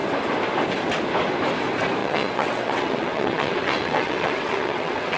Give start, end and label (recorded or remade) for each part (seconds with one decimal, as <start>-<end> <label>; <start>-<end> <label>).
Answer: 0.0-2.0 recorded; 2.0-5.2 remade